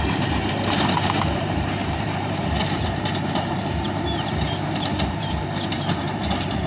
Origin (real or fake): fake